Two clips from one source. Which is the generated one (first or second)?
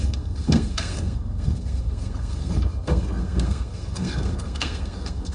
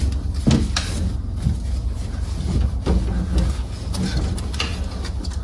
first